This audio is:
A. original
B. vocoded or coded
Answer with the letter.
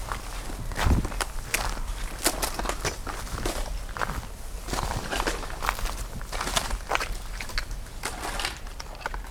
A